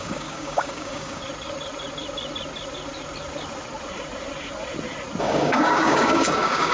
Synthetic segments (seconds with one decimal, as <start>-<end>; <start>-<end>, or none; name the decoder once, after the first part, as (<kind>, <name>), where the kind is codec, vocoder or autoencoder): 0.0-1.2 (codec, DAC); 5.2-6.7